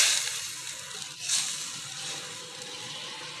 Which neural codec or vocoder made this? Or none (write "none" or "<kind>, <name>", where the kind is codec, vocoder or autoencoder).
none